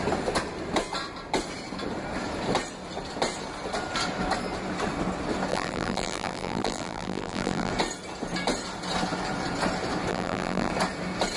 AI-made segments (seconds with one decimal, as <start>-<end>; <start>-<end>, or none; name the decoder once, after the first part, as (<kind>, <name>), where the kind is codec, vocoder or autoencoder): 5.5-7.7 (vocoder, BigVGAN v2); 10.1-10.7